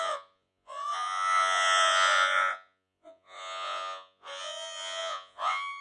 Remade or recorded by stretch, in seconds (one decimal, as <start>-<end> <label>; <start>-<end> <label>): 0.0-5.8 remade